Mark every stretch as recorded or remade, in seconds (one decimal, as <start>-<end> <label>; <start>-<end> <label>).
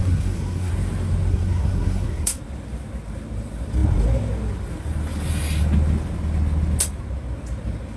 0.0-0.7 remade; 0.7-1.3 recorded; 1.3-2.4 remade; 2.4-8.0 recorded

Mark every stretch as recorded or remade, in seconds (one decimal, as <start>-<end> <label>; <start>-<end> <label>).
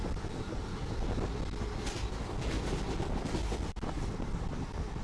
0.0-5.0 recorded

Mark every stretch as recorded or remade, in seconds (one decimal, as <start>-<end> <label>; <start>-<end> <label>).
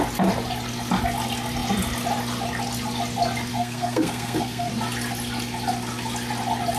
0.0-3.5 recorded; 3.5-4.7 remade; 4.7-6.8 recorded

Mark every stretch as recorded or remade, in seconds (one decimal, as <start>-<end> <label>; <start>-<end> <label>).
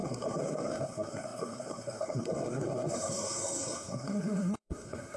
0.0-5.2 remade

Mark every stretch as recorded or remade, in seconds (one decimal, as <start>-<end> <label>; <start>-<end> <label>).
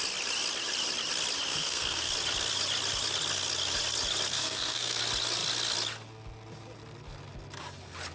0.0-1.5 recorded; 1.5-2.1 remade; 2.1-4.3 recorded; 4.3-5.0 remade; 5.0-8.1 recorded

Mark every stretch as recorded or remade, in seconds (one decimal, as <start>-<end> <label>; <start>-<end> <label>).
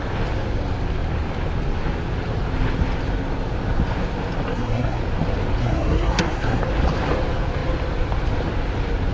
0.0-4.5 recorded; 4.5-5.0 remade; 5.0-5.6 recorded; 5.6-6.6 remade; 6.6-9.1 recorded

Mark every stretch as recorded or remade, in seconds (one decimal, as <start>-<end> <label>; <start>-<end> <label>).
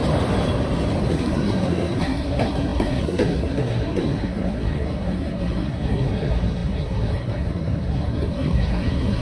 0.0-1.1 recorded; 1.1-9.2 remade